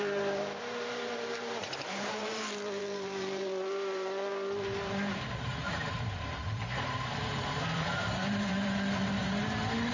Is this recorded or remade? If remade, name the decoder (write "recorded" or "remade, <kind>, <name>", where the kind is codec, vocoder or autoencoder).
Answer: remade, vocoder, BigVGAN v2